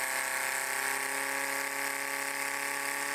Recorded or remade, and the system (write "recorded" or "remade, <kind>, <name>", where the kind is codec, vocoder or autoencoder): recorded